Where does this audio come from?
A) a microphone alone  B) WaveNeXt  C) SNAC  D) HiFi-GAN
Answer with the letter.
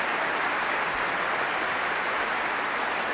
A